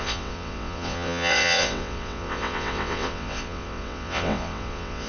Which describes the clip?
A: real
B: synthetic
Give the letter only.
B